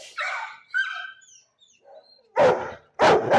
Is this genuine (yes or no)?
yes